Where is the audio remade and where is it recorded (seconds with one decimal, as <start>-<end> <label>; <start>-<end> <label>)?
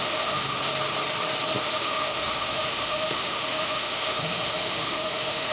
0.0-0.7 remade; 0.7-1.5 recorded; 1.5-5.5 remade